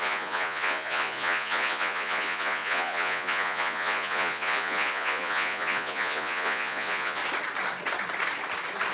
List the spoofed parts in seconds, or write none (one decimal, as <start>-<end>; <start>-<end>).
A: 0.0-7.2